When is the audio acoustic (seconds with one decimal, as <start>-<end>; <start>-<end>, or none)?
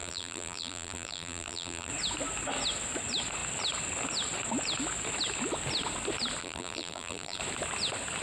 1.9-6.4; 7.4-8.2